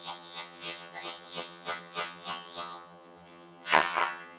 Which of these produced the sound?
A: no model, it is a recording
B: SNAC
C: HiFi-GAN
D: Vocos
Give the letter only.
C